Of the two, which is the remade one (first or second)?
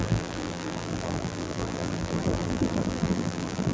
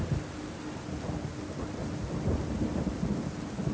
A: first